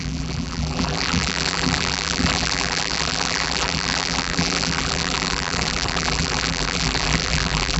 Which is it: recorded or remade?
remade